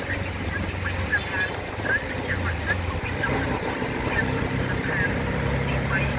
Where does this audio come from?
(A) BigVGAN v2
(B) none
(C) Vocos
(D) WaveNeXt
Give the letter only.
B